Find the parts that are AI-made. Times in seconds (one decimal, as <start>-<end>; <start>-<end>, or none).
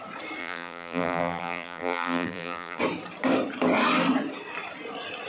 0.4-2.8